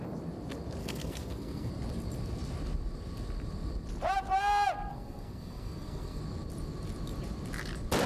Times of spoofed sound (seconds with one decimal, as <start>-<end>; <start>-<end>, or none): 0.8-1.7; 4.9-6.2